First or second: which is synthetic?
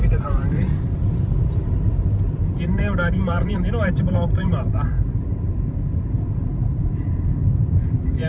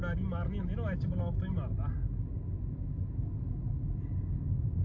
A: first